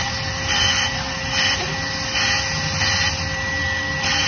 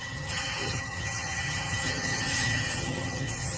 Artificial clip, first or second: second